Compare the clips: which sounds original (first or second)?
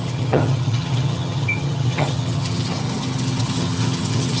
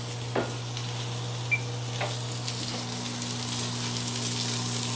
second